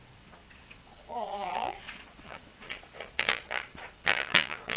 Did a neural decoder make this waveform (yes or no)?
yes